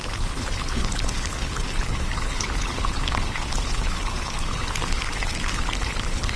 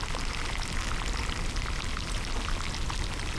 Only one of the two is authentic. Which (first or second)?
second